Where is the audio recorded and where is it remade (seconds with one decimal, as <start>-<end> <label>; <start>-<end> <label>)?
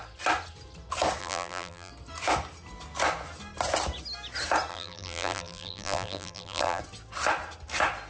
0.0-1.2 recorded; 1.2-1.9 remade; 1.9-4.7 recorded; 4.7-6.8 remade; 6.8-8.1 recorded